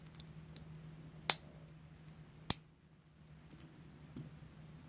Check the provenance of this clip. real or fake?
real